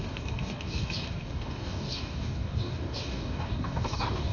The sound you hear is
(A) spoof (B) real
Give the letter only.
A